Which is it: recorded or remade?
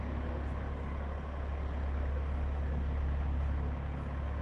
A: recorded